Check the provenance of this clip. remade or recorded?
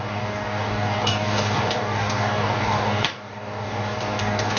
remade